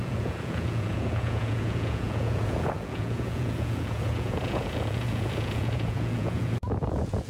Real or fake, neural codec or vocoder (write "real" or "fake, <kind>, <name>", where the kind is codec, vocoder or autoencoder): fake, vocoder, Vocos